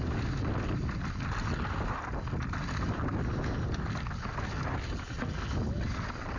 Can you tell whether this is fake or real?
real